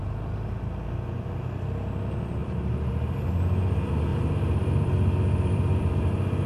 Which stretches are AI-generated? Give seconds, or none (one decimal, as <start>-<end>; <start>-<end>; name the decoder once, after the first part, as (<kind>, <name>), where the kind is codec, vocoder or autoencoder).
2.4-2.9 (vocoder, BigVGAN v2); 4.1-6.1